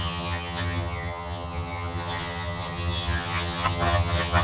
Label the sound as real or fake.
fake